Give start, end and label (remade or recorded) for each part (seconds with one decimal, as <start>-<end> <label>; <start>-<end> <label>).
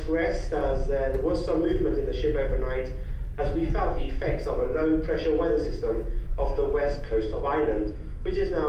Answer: 0.0-0.6 remade; 0.6-3.4 recorded; 3.4-4.8 remade; 4.8-5.8 recorded; 5.8-7.3 remade; 7.3-7.9 recorded; 7.9-8.7 remade